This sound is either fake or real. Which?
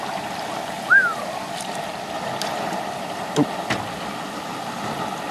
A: real